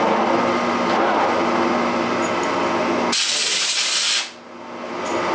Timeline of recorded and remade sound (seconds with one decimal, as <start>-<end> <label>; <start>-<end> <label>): 0.0-5.3 recorded